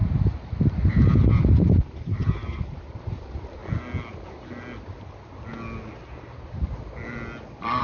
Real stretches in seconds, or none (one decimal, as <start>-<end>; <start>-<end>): 3.6-7.8